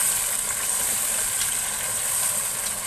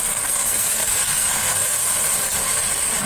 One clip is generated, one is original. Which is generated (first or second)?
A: second